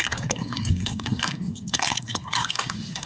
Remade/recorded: remade